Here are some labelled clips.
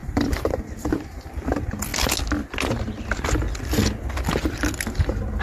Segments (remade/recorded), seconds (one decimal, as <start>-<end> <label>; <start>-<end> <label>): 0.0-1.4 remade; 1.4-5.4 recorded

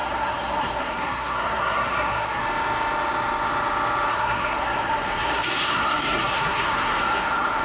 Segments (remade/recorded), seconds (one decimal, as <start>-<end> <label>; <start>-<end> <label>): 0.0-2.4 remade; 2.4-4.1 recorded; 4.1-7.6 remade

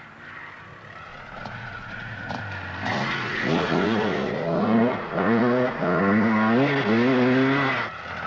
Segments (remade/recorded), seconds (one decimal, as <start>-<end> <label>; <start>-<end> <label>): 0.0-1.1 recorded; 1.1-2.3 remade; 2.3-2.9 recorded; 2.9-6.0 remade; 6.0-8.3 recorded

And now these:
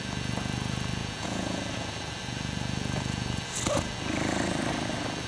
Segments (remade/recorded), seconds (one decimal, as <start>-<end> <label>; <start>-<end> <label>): 0.0-1.0 recorded; 1.0-1.6 remade; 1.6-5.3 recorded

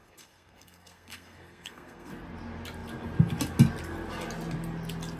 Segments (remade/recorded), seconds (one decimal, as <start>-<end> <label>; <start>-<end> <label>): 0.0-2.1 remade; 2.1-5.2 recorded

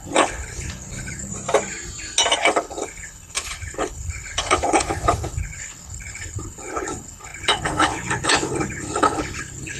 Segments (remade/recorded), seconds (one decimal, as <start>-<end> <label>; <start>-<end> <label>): 0.0-1.3 remade; 1.3-2.4 recorded; 2.4-9.8 remade